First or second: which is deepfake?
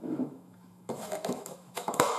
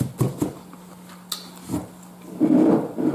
first